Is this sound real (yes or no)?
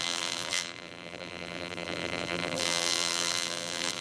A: no